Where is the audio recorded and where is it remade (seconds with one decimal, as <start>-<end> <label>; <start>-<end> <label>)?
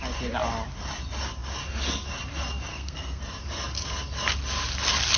0.0-2.7 recorded; 2.7-3.2 remade; 3.2-5.2 recorded